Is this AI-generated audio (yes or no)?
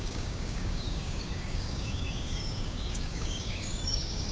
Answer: yes